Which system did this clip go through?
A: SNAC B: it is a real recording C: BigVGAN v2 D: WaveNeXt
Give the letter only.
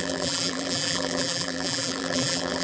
C